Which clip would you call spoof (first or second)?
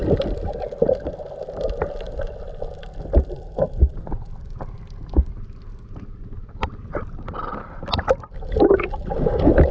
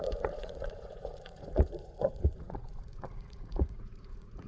second